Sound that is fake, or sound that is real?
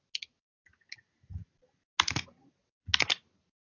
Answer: real